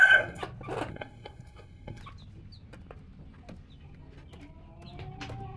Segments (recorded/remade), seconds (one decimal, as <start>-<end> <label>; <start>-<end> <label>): 0.0-0.4 remade; 0.4-0.9 recorded; 0.9-2.0 remade; 2.0-5.6 recorded